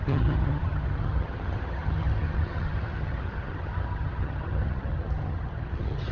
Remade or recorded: remade